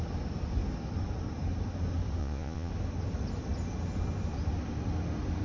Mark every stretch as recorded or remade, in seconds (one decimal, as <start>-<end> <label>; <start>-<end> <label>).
0.0-2.2 recorded; 2.2-2.7 remade; 2.7-5.4 recorded